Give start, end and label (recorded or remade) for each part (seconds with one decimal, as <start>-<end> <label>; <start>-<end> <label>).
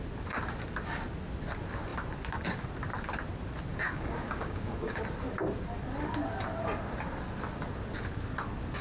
0.0-3.7 recorded; 3.7-5.0 remade; 5.0-8.8 recorded